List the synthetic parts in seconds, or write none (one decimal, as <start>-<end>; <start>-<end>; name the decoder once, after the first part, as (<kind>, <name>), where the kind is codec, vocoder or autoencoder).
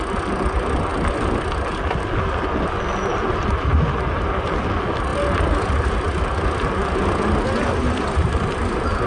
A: none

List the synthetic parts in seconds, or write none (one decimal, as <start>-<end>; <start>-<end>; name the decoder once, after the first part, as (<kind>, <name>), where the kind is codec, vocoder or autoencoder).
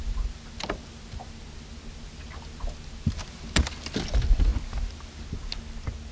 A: none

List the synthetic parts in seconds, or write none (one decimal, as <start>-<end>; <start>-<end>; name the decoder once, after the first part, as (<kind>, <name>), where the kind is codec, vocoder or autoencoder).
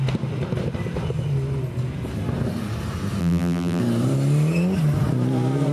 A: 3.2-3.8 (vocoder, BigVGAN v2)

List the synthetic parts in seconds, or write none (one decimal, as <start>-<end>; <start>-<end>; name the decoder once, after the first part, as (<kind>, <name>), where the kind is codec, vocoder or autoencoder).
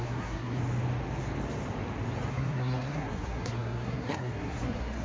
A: 0.0-0.6 (codec, SNAC); 2.3-5.0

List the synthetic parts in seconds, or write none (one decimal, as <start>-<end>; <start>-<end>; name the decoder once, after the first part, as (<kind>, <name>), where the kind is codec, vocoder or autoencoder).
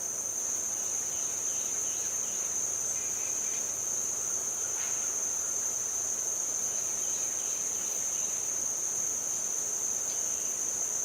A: none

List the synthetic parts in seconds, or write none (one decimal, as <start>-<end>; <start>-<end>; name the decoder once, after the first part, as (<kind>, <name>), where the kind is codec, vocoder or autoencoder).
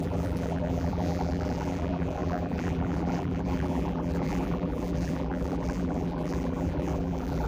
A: 0.0-7.5 (vocoder, BigVGAN v2)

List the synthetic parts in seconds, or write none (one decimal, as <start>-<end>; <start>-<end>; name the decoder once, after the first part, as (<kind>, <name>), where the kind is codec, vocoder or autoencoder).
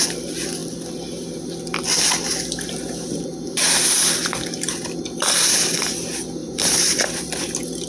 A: 6.4-7.3 (vocoder, BigVGAN v2)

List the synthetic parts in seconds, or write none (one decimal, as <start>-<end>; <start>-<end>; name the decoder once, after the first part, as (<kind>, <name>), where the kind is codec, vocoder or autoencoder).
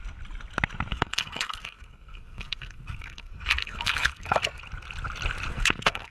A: 0.9-4.6 (codec, SNAC); 5.5-6.1